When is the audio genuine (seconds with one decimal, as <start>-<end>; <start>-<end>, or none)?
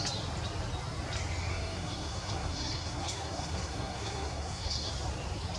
0.0-1.5; 4.9-5.6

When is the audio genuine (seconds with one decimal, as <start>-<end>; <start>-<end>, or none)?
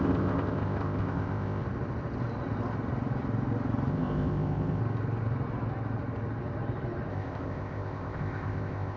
1.6-3.9; 4.8-7.1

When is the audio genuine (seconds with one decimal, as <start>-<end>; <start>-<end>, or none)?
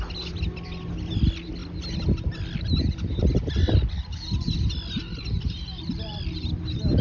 0.0-7.0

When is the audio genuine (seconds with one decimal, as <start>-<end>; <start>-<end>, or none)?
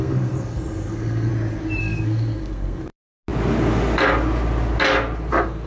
1.3-1.8; 2.9-5.3